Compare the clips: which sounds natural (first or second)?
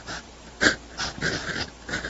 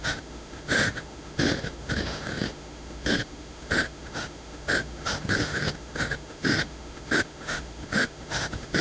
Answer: first